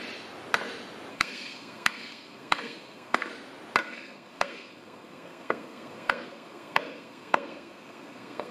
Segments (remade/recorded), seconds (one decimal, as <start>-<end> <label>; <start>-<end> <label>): 0.0-1.1 recorded; 1.1-3.3 remade; 3.3-3.8 recorded; 3.8-8.5 remade